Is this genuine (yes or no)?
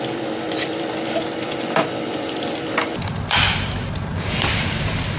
no